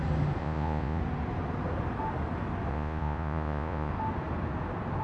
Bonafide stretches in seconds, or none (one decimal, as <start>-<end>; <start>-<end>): 0.0-0.4; 1.0-2.7; 3.9-5.0